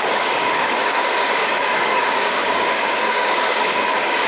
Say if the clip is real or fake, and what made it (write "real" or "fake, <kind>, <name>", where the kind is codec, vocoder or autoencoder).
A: fake, codec, DAC